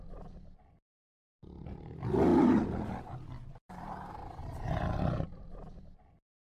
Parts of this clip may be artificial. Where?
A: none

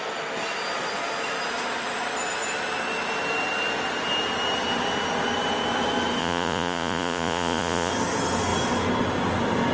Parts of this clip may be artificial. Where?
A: 6.2-7.9 (vocoder, Vocos)

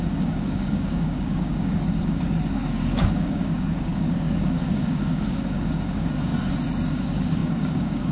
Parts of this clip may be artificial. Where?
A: 0.0-6.3 (codec, DAC); 6.9-8.1

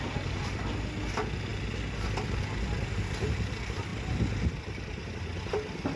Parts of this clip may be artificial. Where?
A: none